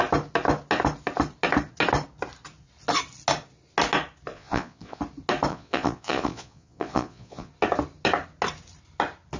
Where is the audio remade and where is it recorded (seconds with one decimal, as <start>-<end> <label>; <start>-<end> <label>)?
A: 0.0-4.3 recorded; 4.3-5.0 remade; 5.0-5.5 recorded; 5.5-7.5 remade; 7.5-9.4 recorded